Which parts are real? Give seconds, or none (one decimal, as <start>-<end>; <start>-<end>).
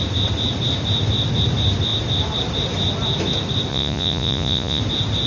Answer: 0.0-3.7; 4.8-5.3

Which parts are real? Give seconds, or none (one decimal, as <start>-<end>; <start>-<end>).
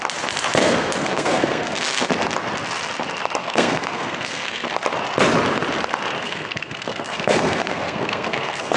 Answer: 0.0-0.6; 2.1-3.4; 4.7-6.2